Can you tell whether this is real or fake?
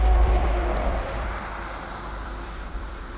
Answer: fake